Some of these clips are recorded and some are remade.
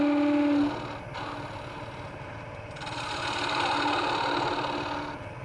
recorded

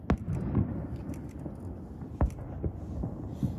recorded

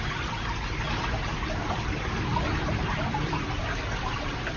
recorded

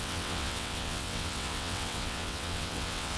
remade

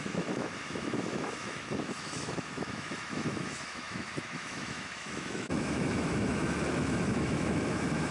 remade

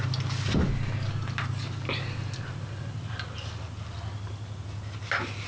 recorded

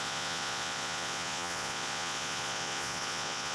remade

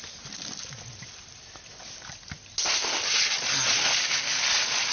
recorded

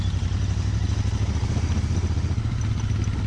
recorded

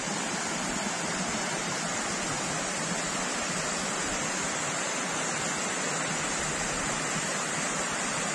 recorded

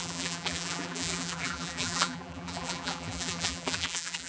remade